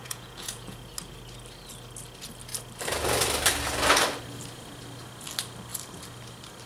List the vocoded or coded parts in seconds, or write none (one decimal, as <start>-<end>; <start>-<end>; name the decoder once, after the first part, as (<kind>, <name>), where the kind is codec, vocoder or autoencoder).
0.0-0.8 (vocoder, Vocos)